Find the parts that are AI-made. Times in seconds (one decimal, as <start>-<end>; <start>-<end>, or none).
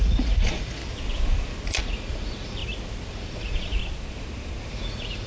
0.0-0.8; 1.8-2.6; 3.1-3.8; 4.7-5.3